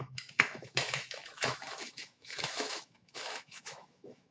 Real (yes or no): no